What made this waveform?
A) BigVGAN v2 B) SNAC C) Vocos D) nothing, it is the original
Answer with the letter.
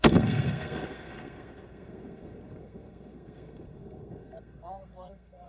B